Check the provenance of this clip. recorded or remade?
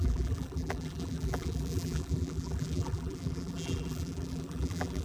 remade